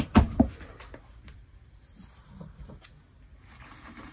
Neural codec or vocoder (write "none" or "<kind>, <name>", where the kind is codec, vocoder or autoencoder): none